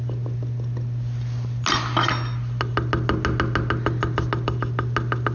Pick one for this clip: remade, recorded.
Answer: recorded